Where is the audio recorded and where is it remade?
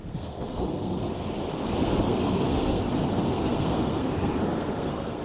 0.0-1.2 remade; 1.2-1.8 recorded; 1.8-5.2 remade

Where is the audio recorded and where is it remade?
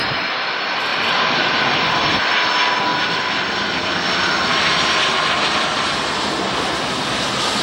0.0-0.9 recorded; 0.9-1.8 remade; 1.8-7.6 recorded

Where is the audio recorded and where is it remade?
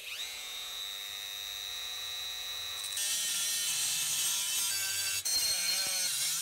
0.0-0.8 remade; 0.8-1.7 recorded; 1.7-2.8 remade; 2.8-6.4 recorded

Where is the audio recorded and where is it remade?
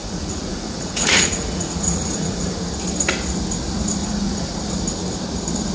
0.0-2.6 remade; 2.6-4.0 recorded; 4.0-4.6 remade; 4.6-5.7 recorded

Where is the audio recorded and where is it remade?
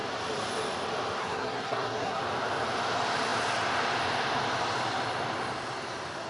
0.0-1.2 recorded; 1.2-2.2 remade; 2.2-6.3 recorded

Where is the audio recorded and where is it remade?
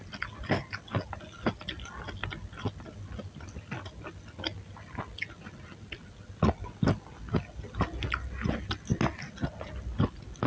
0.0-10.5 recorded